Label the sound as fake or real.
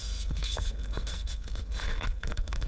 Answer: fake